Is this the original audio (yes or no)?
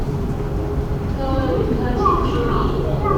yes